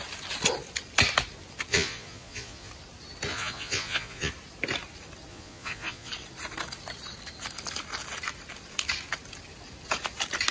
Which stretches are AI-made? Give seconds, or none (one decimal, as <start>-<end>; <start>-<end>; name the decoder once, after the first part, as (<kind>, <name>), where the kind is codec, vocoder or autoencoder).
1.7-2.7 (vocoder, Vocos); 3.3-4.3; 5.3-6.1